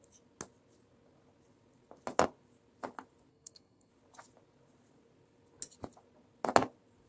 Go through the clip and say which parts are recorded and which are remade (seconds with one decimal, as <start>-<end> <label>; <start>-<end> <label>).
0.0-3.3 recorded; 3.3-3.9 remade; 3.9-7.1 recorded